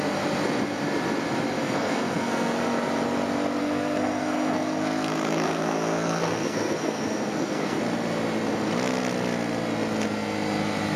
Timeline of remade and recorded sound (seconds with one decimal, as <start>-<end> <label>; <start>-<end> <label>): 0.0-1.6 recorded; 1.6-2.6 remade; 2.6-3.6 recorded; 3.6-7.8 remade; 7.8-11.0 recorded